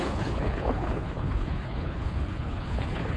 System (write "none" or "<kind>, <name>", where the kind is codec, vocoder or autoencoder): codec, HILCodec